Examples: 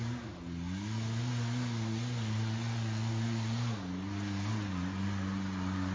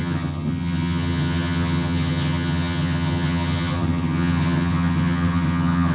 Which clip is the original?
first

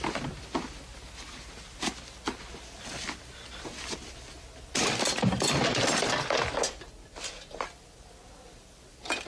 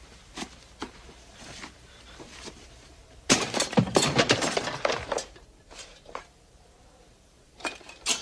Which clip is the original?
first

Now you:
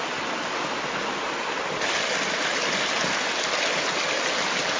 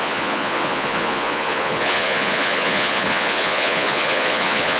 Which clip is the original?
first